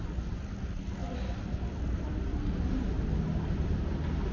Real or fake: real